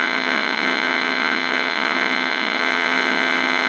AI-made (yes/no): yes